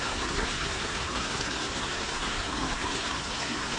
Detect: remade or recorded remade